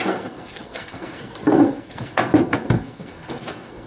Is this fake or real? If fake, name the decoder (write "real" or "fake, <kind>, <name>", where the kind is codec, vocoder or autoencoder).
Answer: fake, codec, SNAC